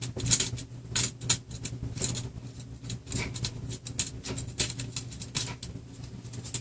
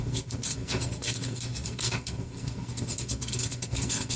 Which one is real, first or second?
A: first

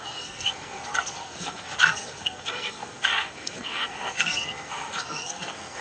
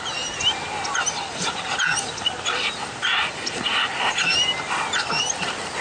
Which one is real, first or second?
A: second